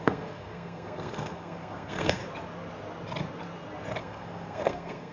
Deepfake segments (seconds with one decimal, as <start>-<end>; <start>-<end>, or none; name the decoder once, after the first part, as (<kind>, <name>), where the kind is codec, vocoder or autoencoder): 0.0-2.2 (codec, SNAC); 4.0-5.1